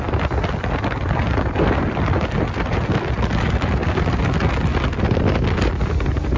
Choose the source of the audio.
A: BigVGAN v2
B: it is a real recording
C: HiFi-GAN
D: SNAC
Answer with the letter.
B